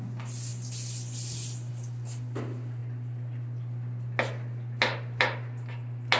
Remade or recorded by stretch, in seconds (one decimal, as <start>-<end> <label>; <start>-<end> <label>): 0.0-6.2 recorded